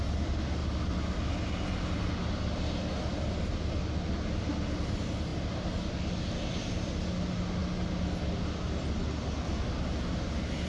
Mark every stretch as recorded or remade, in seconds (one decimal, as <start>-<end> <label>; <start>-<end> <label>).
0.0-10.7 recorded